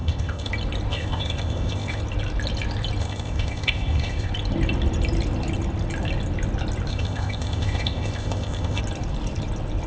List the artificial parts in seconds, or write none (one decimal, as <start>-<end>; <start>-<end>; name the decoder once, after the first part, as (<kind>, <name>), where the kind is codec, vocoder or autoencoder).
0.0-0.5 (codec, ZipCodec); 0.9-2.0; 3.0-4.3; 6.9-8.8